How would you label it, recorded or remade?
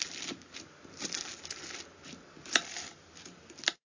recorded